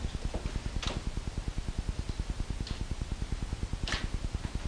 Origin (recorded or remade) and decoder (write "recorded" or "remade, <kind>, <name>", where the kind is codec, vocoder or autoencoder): recorded